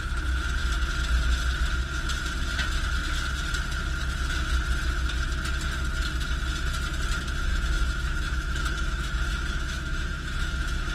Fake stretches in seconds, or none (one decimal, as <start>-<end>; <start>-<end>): 7.5-10.9